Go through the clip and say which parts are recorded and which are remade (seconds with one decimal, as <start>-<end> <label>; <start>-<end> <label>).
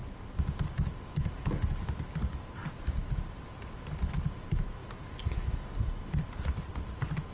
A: 0.0-2.2 recorded; 2.2-2.6 remade; 2.6-4.1 recorded; 4.1-4.8 remade; 4.8-6.0 recorded; 6.0-7.3 remade